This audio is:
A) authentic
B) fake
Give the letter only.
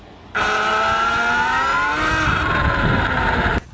A